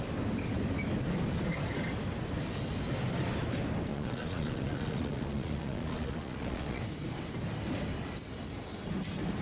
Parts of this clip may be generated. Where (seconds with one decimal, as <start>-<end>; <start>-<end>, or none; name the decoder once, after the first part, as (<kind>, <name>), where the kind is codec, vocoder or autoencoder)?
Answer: 3.9-6.8 (vocoder, Vocos)